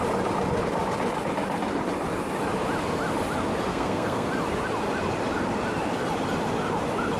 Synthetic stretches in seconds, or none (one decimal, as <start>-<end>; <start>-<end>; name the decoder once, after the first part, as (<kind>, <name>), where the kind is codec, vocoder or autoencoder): 3.7-4.3 (codec, SNAC)